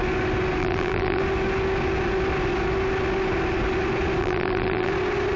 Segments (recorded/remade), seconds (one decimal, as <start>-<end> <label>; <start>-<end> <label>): 0.0-0.6 recorded; 0.6-1.2 remade; 1.2-4.2 recorded; 4.2-4.9 remade; 4.9-5.4 recorded